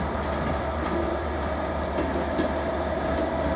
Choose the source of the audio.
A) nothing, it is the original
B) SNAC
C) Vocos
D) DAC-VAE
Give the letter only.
A